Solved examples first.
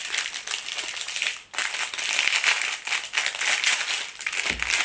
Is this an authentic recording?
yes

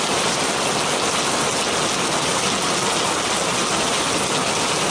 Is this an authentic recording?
yes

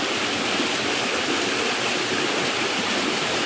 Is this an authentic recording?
yes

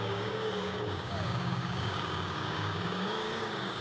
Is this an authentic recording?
no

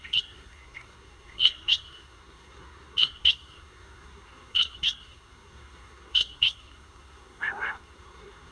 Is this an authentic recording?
no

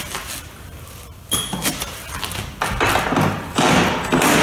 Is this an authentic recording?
yes